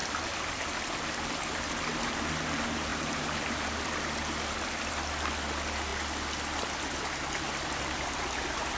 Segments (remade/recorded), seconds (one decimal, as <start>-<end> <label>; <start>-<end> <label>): 0.0-2.9 recorded; 2.9-4.0 remade; 4.0-8.8 recorded